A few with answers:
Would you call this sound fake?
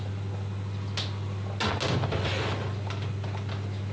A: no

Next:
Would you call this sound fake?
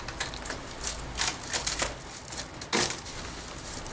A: no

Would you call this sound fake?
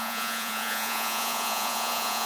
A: yes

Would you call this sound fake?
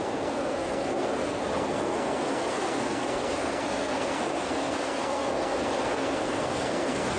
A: yes